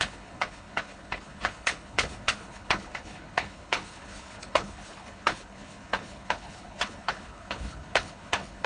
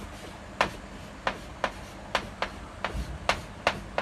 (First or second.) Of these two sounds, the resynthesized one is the first